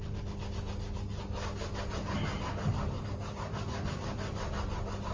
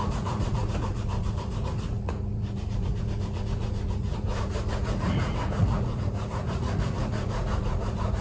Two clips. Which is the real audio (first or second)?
first